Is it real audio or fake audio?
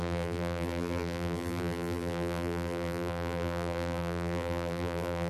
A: fake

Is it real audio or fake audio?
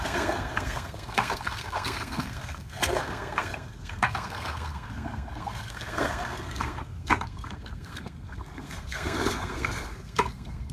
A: fake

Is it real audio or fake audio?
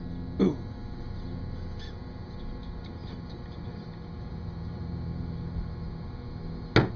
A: real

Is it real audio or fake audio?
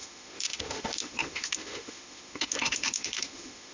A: fake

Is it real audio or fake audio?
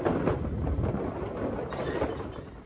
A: real